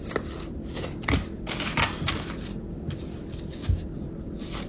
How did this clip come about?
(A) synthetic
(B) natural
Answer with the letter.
B